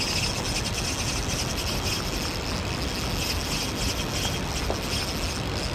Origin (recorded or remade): recorded